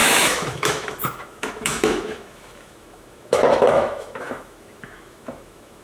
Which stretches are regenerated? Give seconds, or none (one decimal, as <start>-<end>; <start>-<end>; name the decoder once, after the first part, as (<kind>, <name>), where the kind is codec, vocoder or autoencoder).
0.0-5.8 (autoencoder, DAC-VAE)